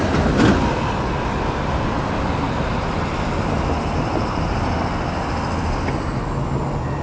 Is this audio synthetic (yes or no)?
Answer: no